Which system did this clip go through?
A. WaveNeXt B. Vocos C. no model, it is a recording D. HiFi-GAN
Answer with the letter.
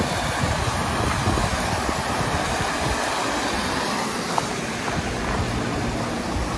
C